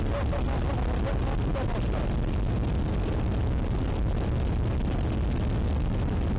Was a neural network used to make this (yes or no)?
no